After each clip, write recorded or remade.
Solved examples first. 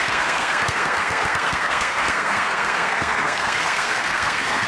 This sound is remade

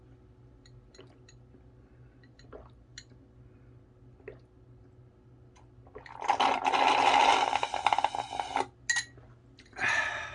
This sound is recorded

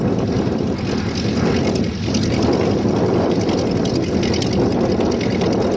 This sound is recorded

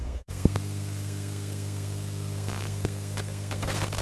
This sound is remade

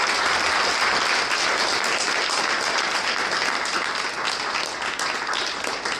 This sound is recorded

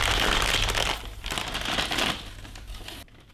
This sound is recorded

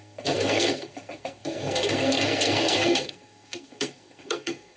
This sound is remade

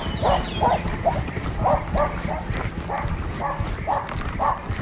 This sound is recorded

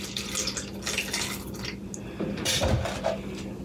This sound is recorded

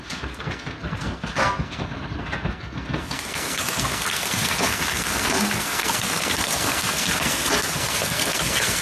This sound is remade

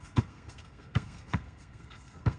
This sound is remade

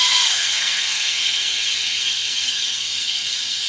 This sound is remade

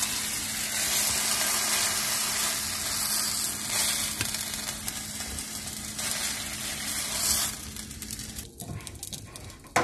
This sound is recorded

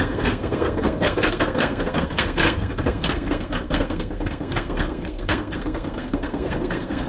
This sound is remade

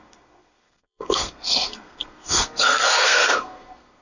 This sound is remade